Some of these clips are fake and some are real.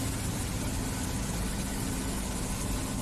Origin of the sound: real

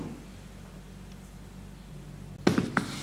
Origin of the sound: real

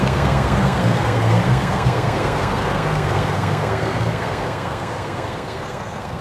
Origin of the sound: fake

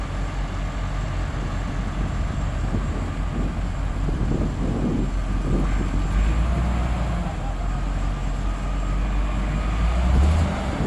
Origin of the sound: real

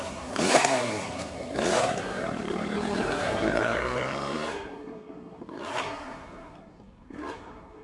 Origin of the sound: fake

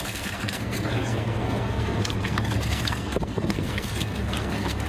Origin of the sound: fake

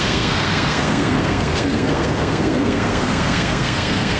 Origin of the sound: fake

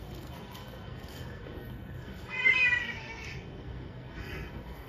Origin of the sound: fake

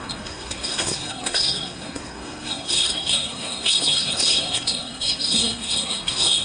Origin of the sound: fake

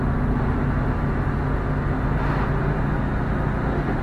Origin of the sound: real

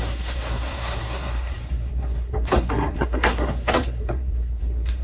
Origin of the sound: fake